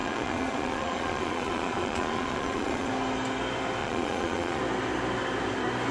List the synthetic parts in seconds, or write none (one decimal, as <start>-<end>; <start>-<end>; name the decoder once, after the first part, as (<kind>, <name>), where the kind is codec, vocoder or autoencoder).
0.0-2.9 (vocoder, Vocos); 3.8-4.6